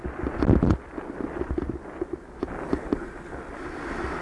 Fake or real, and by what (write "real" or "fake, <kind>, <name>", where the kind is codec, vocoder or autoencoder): real